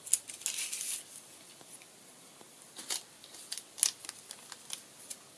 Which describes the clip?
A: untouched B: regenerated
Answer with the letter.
A